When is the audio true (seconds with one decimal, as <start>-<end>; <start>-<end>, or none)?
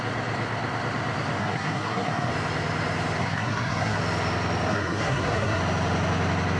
0.0-1.4; 2.3-3.2; 4.0-4.7; 5.6-6.6